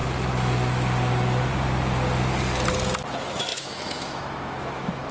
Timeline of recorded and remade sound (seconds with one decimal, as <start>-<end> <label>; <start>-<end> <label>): 0.0-3.1 recorded; 3.1-5.1 remade